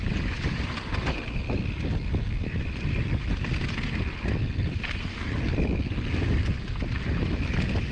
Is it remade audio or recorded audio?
recorded